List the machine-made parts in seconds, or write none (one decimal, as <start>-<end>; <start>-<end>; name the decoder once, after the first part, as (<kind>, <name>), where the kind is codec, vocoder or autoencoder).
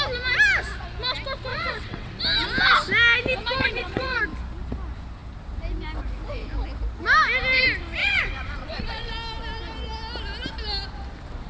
1.5-2.2 (vocoder, WaveNeXt); 3.6-4.2; 8.0-9.1